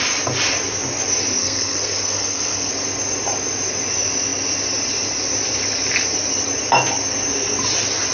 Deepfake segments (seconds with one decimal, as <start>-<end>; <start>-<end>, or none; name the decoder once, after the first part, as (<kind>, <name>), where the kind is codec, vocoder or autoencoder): 1.4-2.7 (codec, SNAC)